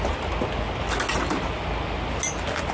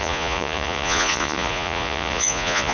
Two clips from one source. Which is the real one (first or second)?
first